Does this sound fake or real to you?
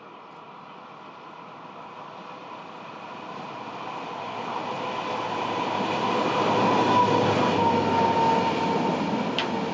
real